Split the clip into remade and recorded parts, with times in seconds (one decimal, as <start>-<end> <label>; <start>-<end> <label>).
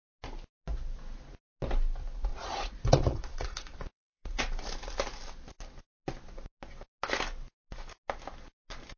0.0-2.3 recorded; 2.3-4.4 remade; 4.4-9.0 recorded